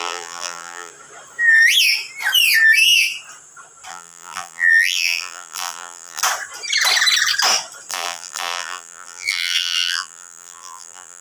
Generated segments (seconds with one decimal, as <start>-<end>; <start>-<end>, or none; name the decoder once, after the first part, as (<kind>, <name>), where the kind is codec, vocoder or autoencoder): 0.0-0.9 (vocoder, BigVGAN v2); 3.9-6.2; 7.9-11.2